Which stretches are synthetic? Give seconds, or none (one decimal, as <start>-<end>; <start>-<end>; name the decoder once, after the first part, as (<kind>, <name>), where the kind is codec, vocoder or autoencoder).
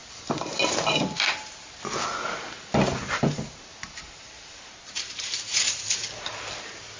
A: 0.0-1.3 (vocoder, BigVGAN v2); 3.0-6.3